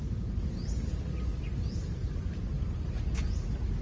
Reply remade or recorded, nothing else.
recorded